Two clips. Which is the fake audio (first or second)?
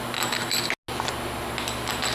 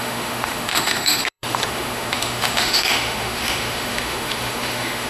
second